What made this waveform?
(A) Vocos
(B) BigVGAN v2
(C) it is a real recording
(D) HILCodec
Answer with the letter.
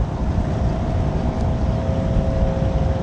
C